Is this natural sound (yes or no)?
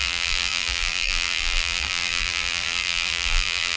no